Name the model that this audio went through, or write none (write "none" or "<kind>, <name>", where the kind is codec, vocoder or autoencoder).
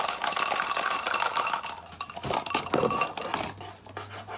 none